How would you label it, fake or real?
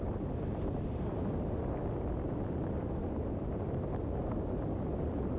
fake